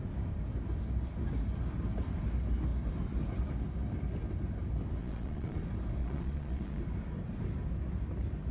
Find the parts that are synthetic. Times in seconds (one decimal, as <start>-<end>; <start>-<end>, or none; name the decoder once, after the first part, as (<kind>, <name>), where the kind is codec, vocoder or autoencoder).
5.0-5.6 (vocoder, Vocos); 6.0-6.8